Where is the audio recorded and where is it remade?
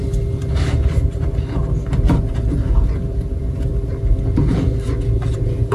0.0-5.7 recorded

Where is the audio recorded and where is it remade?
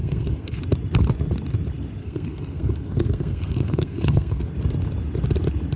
0.0-0.6 remade; 0.6-2.0 recorded; 2.0-4.5 remade; 4.5-5.8 recorded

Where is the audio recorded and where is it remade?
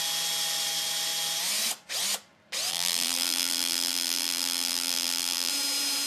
0.0-2.7 recorded; 2.7-5.5 remade; 5.5-6.1 recorded